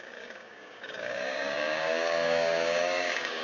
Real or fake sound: fake